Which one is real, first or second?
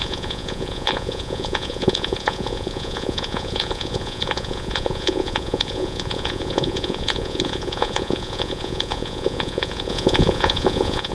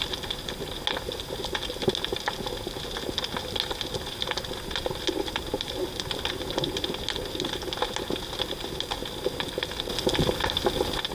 second